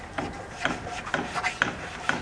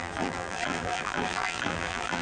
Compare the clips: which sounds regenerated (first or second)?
second